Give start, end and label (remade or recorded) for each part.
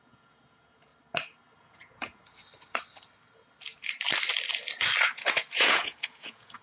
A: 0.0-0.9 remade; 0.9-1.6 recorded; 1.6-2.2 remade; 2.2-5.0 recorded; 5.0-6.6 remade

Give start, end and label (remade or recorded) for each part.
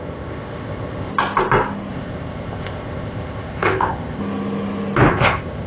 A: 0.0-1.1 remade; 1.1-1.9 recorded; 1.9-4.2 remade; 4.2-5.1 recorded; 5.1-5.7 remade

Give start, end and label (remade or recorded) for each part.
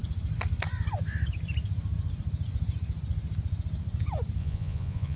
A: 0.0-4.4 recorded; 4.4-5.2 remade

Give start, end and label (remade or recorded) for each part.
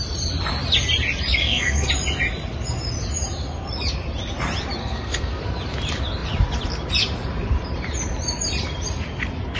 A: 0.0-1.4 recorded; 1.4-1.9 remade; 1.9-4.8 recorded; 4.8-5.4 remade; 5.4-9.6 recorded